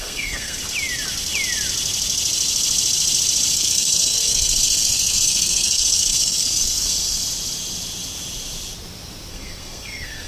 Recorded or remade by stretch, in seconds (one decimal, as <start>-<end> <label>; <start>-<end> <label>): 0.0-0.6 remade; 0.6-3.5 recorded; 3.5-7.2 remade; 7.2-9.3 recorded; 9.3-10.3 remade

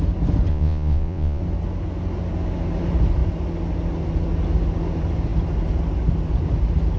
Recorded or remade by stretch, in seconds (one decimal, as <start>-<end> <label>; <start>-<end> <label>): 0.0-0.5 recorded; 0.5-1.4 remade; 1.4-7.0 recorded

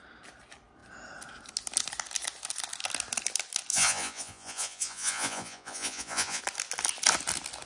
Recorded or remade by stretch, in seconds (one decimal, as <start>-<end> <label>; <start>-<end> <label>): 0.0-3.7 recorded; 3.7-6.4 remade; 6.4-7.7 recorded

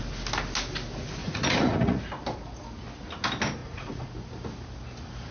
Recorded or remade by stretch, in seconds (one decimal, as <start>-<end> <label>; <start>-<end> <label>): 0.0-1.2 recorded; 1.2-2.0 remade; 2.0-3.6 recorded; 3.6-4.1 remade; 4.1-5.3 recorded